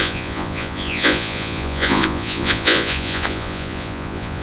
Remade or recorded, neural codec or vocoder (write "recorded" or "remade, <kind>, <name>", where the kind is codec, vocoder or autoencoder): remade, vocoder, Vocos